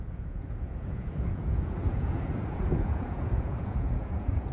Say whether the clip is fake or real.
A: fake